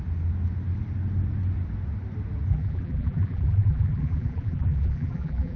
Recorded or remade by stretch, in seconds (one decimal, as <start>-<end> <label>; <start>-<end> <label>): 0.0-2.5 recorded; 2.5-5.6 remade